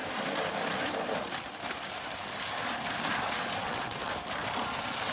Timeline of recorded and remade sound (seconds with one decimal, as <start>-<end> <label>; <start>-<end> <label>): 0.0-3.6 recorded; 3.6-4.1 remade; 4.1-5.1 recorded